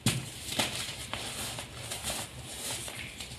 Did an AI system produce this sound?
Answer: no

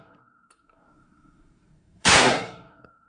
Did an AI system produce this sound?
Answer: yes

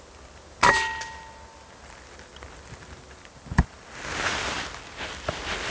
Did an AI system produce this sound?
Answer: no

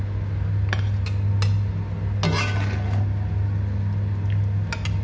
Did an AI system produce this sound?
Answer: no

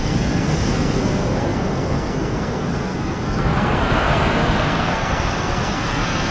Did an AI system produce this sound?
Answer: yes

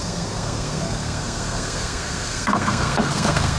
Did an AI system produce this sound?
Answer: yes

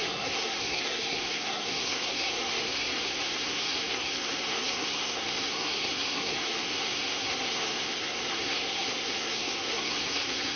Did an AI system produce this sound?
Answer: yes